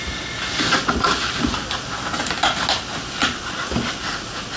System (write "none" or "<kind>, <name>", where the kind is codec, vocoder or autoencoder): none